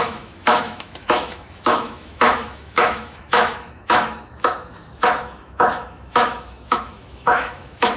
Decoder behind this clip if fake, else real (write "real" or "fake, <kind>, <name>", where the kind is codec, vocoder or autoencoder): fake, autoencoder, DAC-VAE